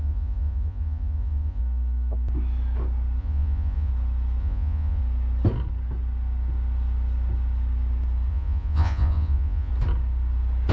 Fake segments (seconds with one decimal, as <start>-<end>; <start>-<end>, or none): 0.0-1.6; 3.2-3.9; 4.4-5.0; 8.3-9.7